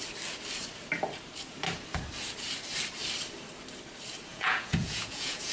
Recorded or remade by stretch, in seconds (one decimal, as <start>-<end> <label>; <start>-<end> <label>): 0.0-4.3 recorded; 4.3-5.5 remade